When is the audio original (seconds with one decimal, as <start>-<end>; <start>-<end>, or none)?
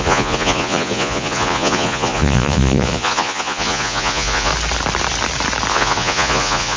4.5-5.7